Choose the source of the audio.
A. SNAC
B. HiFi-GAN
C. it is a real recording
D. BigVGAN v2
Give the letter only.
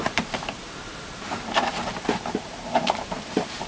D